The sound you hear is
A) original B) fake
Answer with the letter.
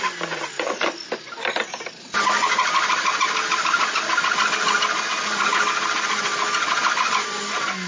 A